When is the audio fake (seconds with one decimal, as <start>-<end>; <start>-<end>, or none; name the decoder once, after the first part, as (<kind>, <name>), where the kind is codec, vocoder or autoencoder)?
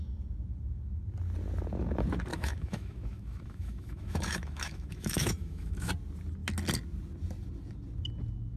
2.3-5.9 (autoencoder, DAC-VAE)